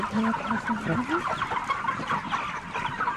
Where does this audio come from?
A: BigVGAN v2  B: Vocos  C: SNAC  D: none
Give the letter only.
D